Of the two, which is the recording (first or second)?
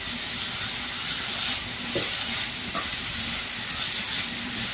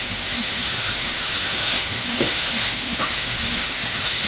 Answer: first